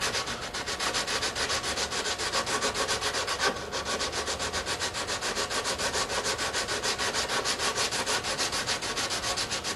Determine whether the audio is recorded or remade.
recorded